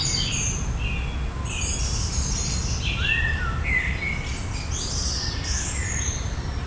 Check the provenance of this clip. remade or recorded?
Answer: recorded